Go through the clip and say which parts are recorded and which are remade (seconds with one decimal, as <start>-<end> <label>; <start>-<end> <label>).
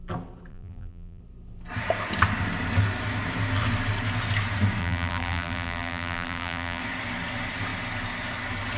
0.0-0.5 recorded; 0.5-1.2 remade; 1.2-4.8 recorded; 4.8-6.8 remade; 6.8-8.8 recorded